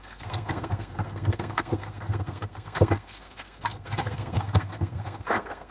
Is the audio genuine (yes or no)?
no